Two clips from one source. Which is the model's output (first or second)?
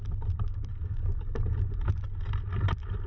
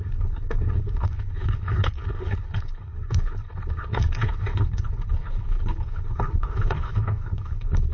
second